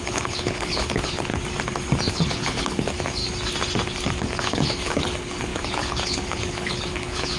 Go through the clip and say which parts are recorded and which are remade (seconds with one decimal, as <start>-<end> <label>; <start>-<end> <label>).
0.0-1.3 remade; 1.3-2.1 recorded; 2.1-3.2 remade; 3.2-4.2 recorded; 4.2-7.4 remade